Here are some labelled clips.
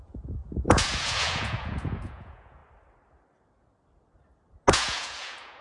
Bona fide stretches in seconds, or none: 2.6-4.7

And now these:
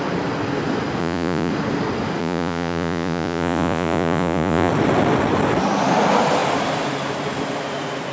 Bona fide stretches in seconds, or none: 0.0-1.0; 1.5-2.2; 4.7-8.1